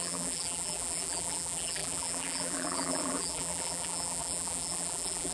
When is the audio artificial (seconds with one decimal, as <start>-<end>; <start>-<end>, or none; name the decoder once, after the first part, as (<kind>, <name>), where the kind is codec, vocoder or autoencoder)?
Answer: 0.0-5.3 (vocoder, BigVGAN v2)